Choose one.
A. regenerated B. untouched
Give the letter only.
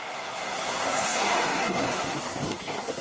A